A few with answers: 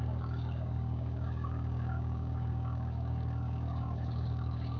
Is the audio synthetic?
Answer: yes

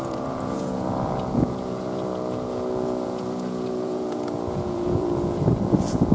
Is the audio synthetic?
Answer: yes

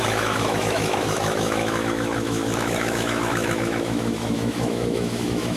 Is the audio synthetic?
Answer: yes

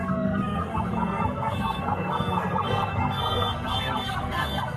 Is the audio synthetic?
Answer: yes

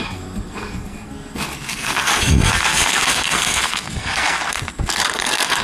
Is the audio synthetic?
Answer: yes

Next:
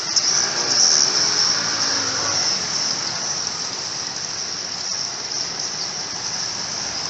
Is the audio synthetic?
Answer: no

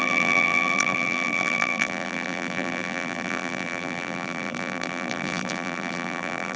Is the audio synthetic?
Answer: yes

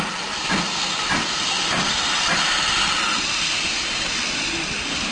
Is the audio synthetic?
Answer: no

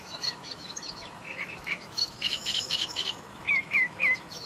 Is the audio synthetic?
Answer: yes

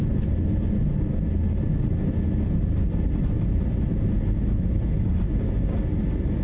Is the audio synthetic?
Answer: no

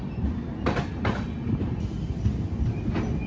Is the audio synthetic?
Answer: no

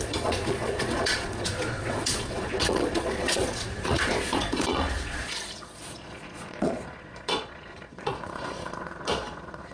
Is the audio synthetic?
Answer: yes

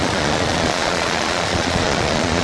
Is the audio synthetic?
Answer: yes